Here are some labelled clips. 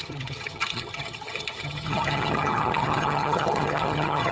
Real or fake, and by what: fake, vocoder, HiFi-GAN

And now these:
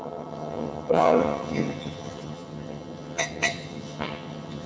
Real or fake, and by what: fake, vocoder, HiFi-GAN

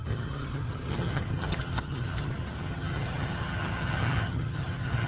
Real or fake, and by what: fake, vocoder, HiFi-GAN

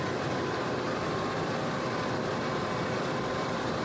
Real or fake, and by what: real